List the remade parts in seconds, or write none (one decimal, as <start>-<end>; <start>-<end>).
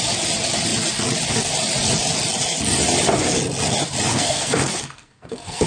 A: 4.1-5.7